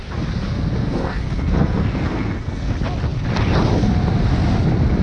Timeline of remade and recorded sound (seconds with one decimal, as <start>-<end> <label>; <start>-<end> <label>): 0.0-0.8 recorded; 0.8-2.7 remade; 2.7-5.0 recorded